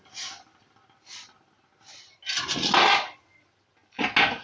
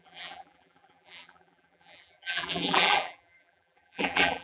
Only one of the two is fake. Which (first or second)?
second